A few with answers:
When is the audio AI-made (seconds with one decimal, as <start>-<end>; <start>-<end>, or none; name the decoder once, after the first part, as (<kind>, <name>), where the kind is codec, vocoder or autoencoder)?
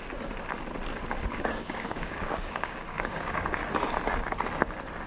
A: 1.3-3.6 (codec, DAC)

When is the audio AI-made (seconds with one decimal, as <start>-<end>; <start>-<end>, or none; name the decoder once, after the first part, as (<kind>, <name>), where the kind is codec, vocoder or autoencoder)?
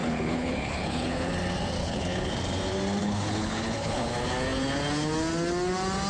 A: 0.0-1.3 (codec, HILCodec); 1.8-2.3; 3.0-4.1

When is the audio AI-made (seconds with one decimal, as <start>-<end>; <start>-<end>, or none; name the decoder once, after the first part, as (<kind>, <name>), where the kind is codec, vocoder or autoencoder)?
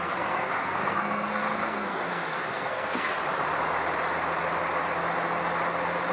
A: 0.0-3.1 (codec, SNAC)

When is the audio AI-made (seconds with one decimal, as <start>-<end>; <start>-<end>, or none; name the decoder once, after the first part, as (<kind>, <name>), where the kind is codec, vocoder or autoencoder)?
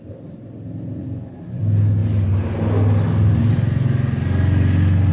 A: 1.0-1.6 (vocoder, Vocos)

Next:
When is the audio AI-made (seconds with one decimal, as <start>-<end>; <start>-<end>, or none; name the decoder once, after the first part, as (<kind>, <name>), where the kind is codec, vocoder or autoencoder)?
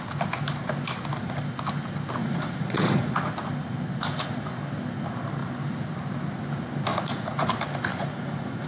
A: 2.2-3.3 (vocoder, Vocos); 6.9-7.5; 7.9-8.7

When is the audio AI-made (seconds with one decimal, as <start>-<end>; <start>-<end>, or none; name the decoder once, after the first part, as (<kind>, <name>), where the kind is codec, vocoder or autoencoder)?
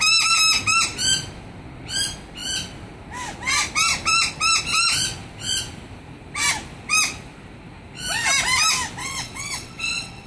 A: 9.0-10.3 (vocoder, WaveNeXt)